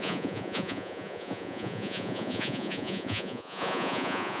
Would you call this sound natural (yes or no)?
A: no